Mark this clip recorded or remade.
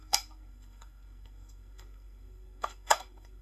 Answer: remade